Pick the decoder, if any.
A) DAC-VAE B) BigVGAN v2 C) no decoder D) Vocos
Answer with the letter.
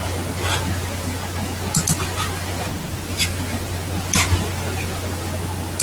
C